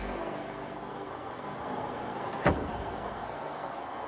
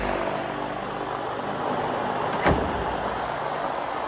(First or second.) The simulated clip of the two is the first